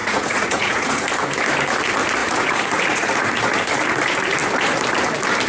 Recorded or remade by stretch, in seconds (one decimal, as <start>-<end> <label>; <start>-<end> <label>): 0.0-1.1 remade; 1.1-2.2 recorded; 2.2-3.4 remade; 3.4-5.5 recorded